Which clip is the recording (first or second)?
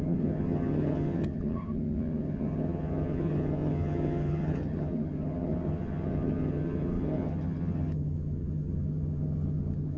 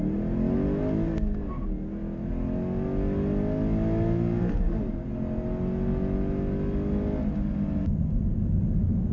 second